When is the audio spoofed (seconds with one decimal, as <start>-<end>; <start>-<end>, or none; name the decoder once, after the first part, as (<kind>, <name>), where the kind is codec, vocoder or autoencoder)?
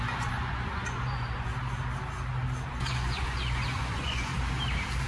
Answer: 0.0-1.5 (vocoder, Vocos); 2.7-4.3